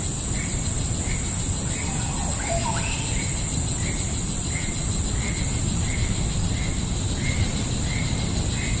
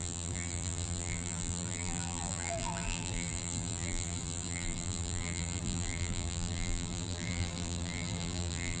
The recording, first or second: first